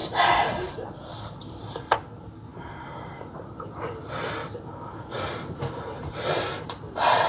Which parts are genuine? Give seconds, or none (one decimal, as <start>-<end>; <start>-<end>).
1.6-2.5; 3.5-4.4; 6.3-7.3